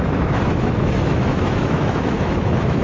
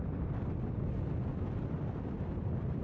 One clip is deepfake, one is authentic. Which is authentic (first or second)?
second